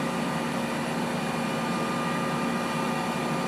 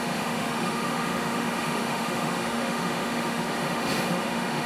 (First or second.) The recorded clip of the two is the first